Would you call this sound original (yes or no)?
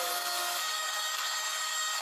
no